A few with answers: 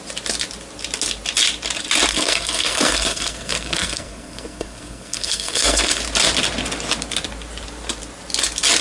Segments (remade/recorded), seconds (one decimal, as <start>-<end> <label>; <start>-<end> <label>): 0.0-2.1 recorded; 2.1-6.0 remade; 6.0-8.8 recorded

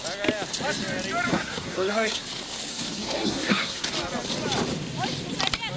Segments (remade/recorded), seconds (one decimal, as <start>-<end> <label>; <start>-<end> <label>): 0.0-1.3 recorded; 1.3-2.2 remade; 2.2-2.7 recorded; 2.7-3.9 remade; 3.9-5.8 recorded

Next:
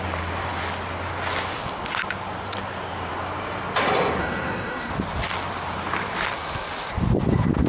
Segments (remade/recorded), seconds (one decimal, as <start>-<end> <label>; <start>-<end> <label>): 0.0-4.2 recorded; 4.2-4.9 remade; 4.9-7.7 recorded